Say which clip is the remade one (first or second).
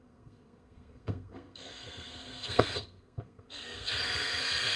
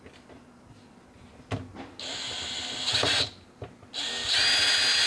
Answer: first